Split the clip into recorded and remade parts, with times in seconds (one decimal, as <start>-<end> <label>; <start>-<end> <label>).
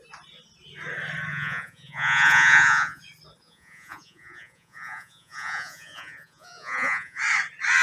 0.0-1.3 recorded; 1.3-3.0 remade; 3.0-3.4 recorded; 3.4-7.2 remade; 7.2-7.8 recorded